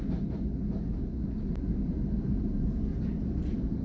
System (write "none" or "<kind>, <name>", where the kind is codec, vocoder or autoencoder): none